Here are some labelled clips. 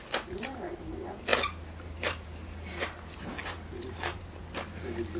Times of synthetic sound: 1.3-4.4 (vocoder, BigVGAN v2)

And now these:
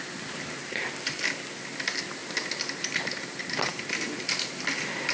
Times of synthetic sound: none

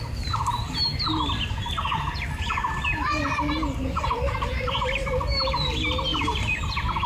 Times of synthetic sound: none

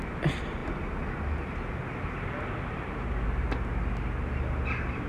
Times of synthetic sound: none